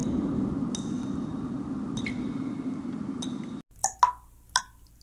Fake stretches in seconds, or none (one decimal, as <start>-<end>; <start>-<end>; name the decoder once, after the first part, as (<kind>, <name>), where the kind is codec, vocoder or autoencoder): none